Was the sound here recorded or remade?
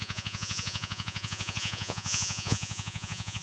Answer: remade